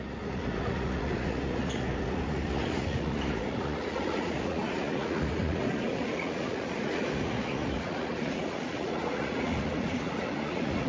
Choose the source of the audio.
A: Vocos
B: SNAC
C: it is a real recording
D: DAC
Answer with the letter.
A